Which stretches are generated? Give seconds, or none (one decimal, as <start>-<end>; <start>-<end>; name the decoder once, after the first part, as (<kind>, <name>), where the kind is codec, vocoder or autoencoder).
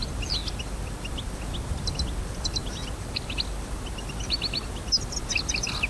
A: none